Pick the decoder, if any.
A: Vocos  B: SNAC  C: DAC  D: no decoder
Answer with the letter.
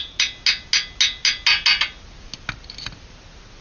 D